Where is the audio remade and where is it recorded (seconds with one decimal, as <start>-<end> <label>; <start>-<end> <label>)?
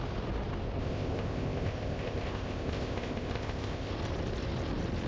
0.0-0.8 recorded; 0.8-3.9 remade; 3.9-5.1 recorded